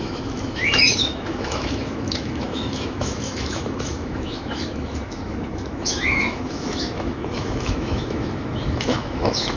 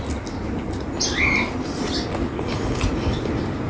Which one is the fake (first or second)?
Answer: first